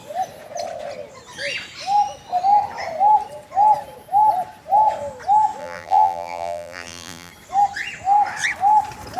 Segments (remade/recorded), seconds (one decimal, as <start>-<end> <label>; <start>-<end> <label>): 0.0-5.6 recorded; 5.6-7.3 remade; 7.3-9.2 recorded